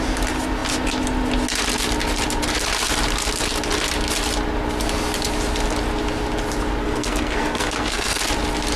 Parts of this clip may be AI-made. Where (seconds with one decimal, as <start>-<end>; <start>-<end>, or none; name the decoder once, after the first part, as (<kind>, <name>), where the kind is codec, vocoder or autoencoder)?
6.8-8.2 (codec, SNAC)